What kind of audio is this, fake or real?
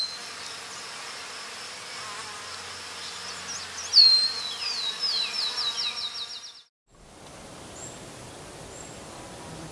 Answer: real